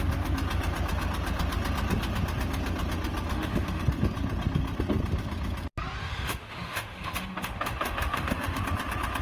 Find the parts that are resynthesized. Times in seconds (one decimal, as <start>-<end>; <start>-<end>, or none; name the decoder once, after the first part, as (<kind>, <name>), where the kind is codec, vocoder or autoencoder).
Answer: 3.3-3.8 (autoencoder, DAC-VAE); 6.1-8.6